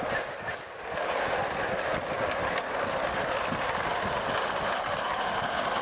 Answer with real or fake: real